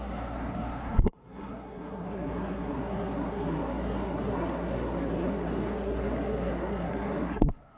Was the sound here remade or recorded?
remade